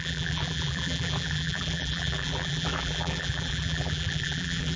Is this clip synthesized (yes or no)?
yes